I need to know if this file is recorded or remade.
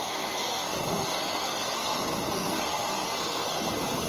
remade